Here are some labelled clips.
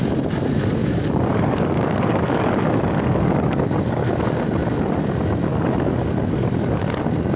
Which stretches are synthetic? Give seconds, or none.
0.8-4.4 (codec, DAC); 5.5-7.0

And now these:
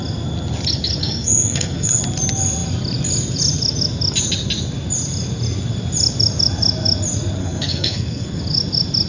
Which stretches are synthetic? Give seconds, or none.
1.0-2.0 (codec, SNAC); 7.4-8.4

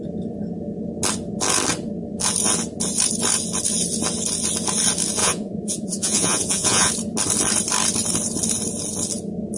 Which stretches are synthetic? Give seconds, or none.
5.2-6.9 (vocoder, Vocos)

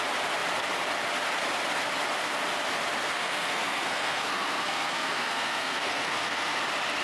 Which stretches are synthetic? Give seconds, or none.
3.0-6.6 (codec, SNAC)

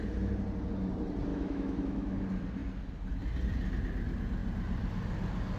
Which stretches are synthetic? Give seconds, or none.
1.3-2.2 (autoencoder, DAC-VAE)

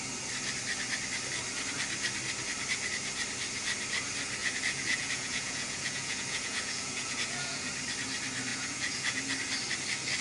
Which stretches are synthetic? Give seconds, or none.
4.4-7.7 (vocoder, Vocos); 8.5-9.2

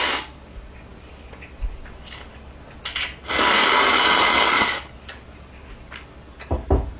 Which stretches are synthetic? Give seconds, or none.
none